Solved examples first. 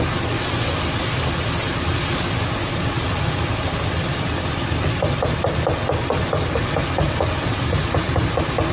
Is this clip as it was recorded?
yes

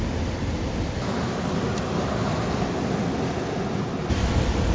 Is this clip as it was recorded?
yes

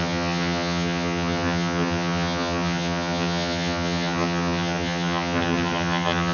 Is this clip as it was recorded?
no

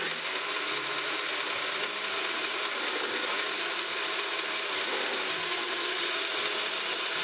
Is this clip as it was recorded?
yes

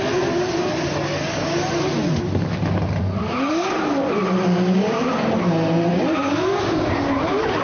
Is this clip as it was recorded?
yes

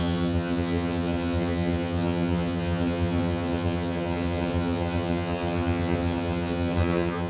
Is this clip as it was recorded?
no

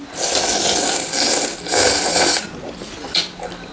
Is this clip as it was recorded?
yes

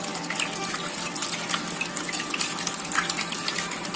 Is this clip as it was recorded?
yes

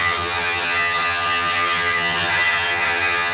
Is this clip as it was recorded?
no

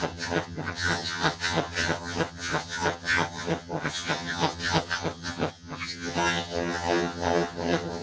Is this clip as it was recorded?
no